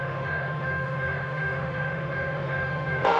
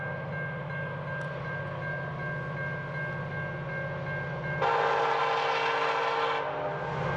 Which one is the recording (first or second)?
second